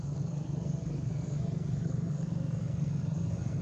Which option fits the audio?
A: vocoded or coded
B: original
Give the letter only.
A